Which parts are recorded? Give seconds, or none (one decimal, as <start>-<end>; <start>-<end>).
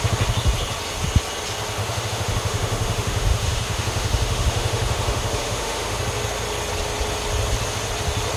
0.0-1.8; 6.0-8.4